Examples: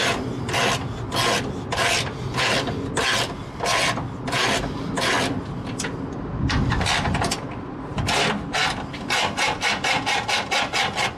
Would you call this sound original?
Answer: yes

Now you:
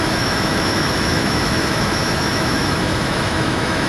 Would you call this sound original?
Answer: no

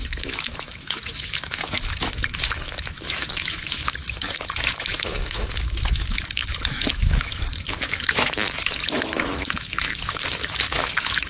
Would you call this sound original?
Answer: no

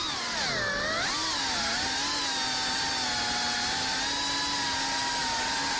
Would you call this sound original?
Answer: yes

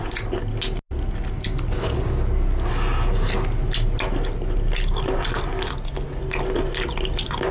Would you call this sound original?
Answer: yes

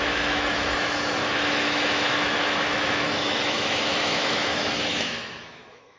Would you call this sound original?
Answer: no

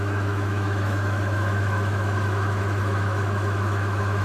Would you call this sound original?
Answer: no